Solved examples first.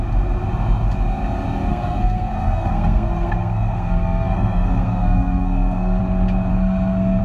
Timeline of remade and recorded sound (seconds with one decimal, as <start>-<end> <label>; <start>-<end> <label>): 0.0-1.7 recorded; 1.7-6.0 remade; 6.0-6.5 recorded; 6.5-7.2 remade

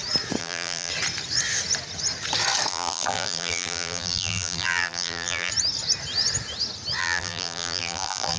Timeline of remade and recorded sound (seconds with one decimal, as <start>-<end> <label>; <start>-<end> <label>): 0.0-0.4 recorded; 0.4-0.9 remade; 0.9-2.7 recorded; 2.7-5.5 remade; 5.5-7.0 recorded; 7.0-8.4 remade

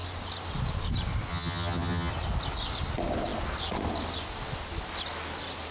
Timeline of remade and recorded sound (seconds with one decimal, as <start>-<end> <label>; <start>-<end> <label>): 0.0-1.3 recorded; 1.3-2.1 remade; 2.1-5.7 recorded

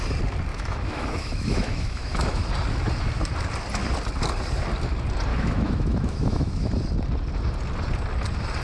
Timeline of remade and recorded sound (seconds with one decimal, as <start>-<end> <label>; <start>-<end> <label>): 0.0-0.5 recorded; 0.5-2.4 remade; 2.4-5.3 recorded; 5.3-6.7 remade; 6.7-8.6 recorded

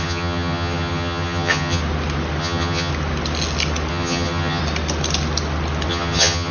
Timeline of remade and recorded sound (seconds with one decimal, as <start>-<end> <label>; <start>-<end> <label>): 0.0-1.8 remade; 1.8-2.4 recorded; 2.4-2.9 remade; 2.9-3.9 recorded; 3.9-4.6 remade; 4.6-5.9 recorded; 5.9-6.5 remade

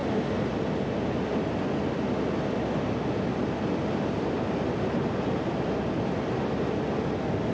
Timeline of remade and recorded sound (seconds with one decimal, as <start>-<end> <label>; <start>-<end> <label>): 0.0-7.5 recorded